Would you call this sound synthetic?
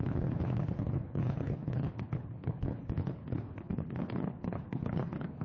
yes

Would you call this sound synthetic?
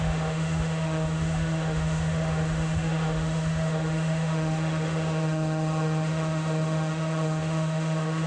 yes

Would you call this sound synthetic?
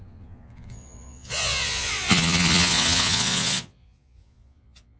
yes